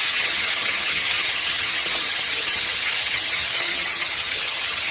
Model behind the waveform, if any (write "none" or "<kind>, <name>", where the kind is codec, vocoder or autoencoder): vocoder, HiFi-GAN